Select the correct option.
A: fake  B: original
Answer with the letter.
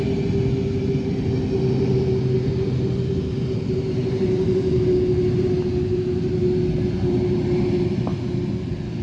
B